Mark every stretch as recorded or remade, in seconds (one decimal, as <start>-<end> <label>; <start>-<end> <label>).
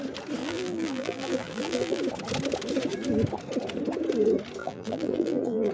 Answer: 0.0-0.4 recorded; 0.4-2.0 remade; 2.0-4.6 recorded; 4.6-5.7 remade